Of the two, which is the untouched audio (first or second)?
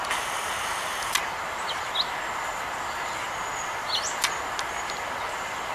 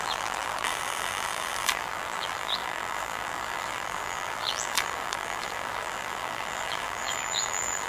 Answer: first